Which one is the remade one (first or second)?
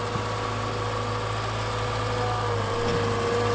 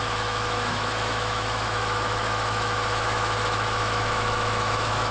second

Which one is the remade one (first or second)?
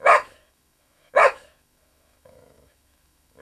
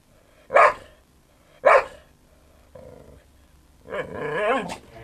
first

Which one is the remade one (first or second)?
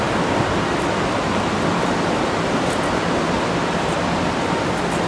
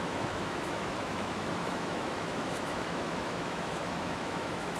second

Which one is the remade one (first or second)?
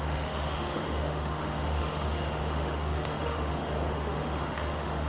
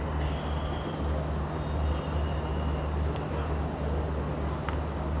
first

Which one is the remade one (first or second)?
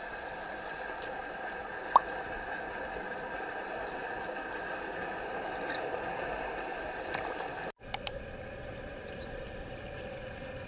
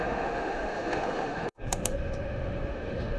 second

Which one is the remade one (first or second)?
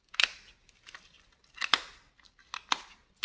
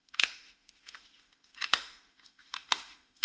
second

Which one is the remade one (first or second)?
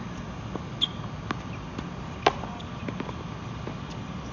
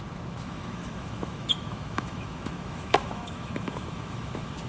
second